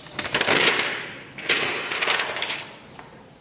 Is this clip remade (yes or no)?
no